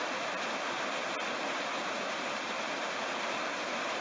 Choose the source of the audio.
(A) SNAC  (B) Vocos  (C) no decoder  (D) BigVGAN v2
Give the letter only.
C